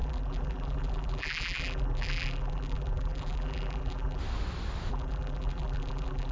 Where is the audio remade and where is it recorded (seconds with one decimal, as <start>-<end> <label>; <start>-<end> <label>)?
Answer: 0.0-4.2 remade; 4.2-4.9 recorded; 4.9-6.3 remade